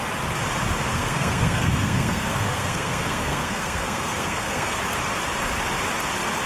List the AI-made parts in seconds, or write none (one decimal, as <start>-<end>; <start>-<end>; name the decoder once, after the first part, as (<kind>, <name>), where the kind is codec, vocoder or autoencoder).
0.9-4.8 (codec, SNAC)

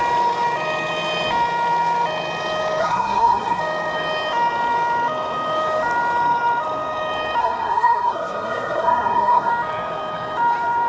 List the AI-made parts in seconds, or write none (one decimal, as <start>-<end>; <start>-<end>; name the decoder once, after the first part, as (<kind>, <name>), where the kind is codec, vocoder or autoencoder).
2.8-3.6 (codec, SNAC); 7.4-9.5

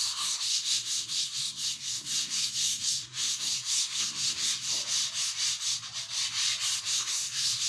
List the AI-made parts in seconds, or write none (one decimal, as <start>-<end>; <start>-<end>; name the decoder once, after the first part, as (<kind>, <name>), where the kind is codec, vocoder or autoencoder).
0.0-4.8 (codec, SNAC); 6.8-7.7

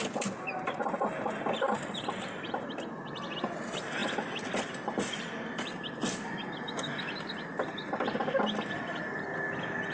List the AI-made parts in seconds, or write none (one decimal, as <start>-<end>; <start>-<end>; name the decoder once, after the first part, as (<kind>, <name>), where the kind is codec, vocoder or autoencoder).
none